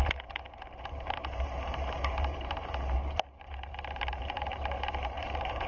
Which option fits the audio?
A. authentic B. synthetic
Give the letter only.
B